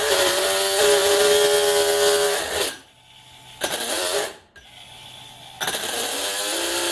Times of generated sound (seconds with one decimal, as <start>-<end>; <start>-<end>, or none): none